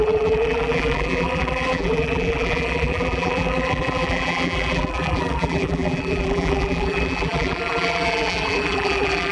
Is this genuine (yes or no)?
no